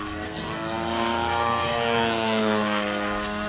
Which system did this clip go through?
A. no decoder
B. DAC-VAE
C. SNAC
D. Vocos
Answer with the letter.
C